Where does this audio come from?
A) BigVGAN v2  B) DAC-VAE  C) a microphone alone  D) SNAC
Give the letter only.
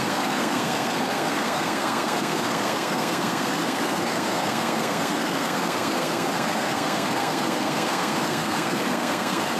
D